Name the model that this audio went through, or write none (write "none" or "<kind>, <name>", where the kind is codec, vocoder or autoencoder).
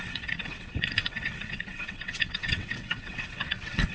vocoder, WaveNeXt